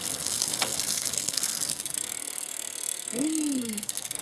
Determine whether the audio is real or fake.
fake